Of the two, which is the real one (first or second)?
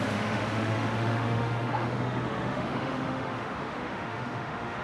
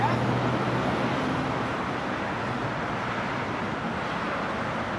second